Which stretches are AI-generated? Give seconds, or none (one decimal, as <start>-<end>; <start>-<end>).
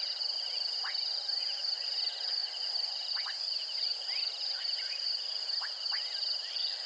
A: none